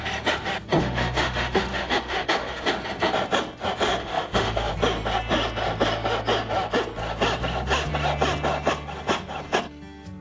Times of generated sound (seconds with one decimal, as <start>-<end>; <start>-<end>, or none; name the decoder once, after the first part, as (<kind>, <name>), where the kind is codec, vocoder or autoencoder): 0.8-2.7 (autoencoder, DAC-VAE); 4.0-4.7